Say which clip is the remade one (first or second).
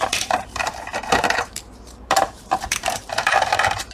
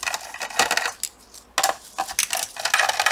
first